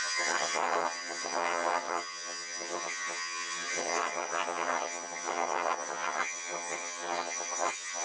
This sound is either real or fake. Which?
fake